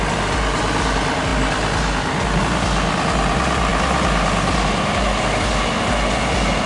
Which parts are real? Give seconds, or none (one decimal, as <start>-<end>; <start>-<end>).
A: 0.0-6.7